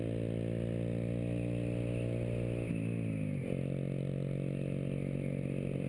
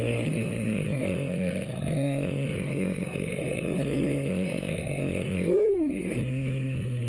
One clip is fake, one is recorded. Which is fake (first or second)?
second